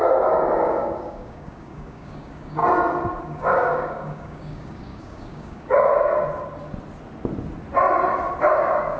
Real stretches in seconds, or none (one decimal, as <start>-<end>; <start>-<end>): 2.6-3.2; 6.1-8.5